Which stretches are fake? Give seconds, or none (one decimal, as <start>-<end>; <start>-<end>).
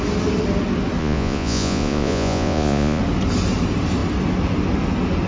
1.0-3.0